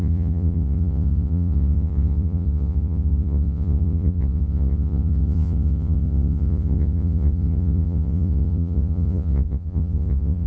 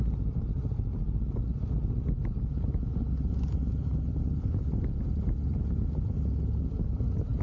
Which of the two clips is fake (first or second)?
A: first